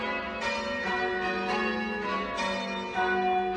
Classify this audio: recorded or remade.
recorded